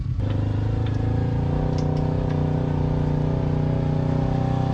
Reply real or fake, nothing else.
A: real